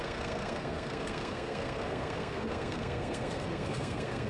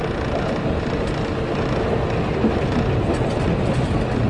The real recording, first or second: second